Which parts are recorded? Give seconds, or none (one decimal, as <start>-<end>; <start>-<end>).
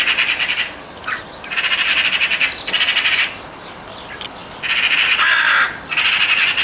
0.0-6.6